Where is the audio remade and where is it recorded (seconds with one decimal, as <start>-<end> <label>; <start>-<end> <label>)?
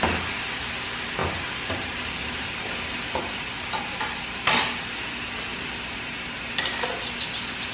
0.0-1.2 recorded; 1.2-4.0 remade; 4.0-5.5 recorded; 5.5-6.5 remade; 6.5-7.7 recorded